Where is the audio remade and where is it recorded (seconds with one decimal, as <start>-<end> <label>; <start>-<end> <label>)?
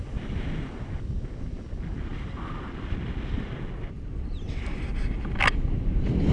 0.0-6.3 recorded